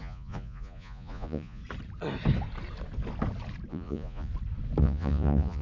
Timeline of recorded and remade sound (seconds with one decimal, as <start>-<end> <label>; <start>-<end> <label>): 0.0-1.6 remade; 1.6-3.7 recorded; 3.7-4.3 remade; 4.3-4.8 recorded; 4.8-5.6 remade

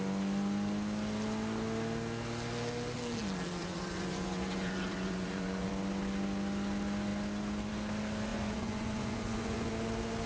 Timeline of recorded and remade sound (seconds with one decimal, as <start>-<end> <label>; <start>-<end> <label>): 0.0-3.6 recorded; 3.6-5.7 remade; 5.7-8.3 recorded; 8.3-9.7 remade; 9.7-10.3 recorded

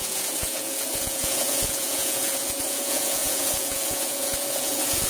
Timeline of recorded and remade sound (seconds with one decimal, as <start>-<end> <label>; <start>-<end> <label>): 0.0-5.1 remade

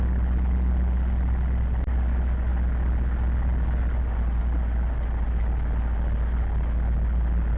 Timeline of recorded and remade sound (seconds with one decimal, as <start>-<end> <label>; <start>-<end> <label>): 0.0-7.6 recorded